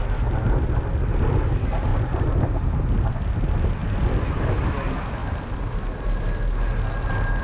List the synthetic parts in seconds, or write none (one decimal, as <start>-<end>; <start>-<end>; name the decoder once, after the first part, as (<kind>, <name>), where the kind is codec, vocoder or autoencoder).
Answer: 1.9-2.7 (vocoder, BigVGAN v2); 5.2-6.2